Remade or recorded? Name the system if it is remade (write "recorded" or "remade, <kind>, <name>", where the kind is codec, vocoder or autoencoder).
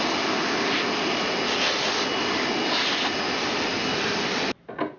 recorded